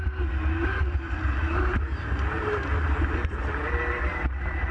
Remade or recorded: recorded